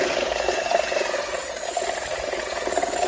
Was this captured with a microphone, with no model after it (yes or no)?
no